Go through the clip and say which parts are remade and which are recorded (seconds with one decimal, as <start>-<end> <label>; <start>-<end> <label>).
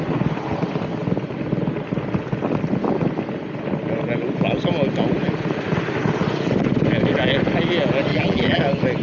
0.0-8.1 recorded; 8.1-8.6 remade; 8.6-9.0 recorded